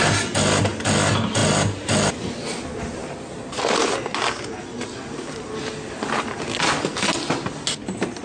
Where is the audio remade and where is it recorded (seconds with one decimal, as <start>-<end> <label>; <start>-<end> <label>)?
0.0-8.2 recorded